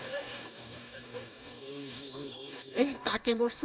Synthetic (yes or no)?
yes